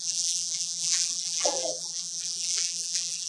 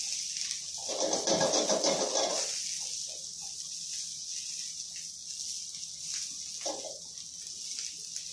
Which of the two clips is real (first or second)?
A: second